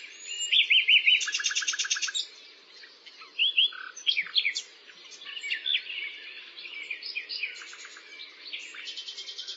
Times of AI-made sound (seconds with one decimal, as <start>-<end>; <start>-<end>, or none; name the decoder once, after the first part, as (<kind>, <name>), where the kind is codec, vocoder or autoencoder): 3.4-4.6 (vocoder, BigVGAN v2); 5.6-7.3